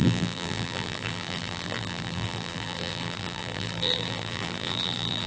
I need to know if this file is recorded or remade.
remade